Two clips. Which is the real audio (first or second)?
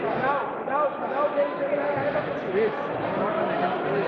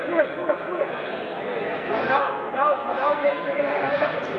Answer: first